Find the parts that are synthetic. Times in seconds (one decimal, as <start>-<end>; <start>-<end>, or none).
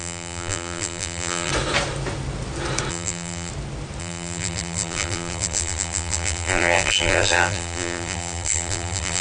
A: 0.0-1.5; 2.9-3.5; 4.0-9.2